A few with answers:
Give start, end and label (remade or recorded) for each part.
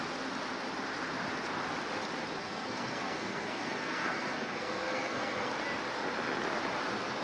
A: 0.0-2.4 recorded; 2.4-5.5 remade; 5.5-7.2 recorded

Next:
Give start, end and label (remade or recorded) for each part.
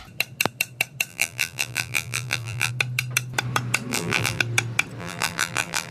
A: 0.0-1.1 recorded; 1.1-2.7 remade; 2.7-3.9 recorded; 3.9-4.4 remade; 4.4-5.0 recorded; 5.0-5.9 remade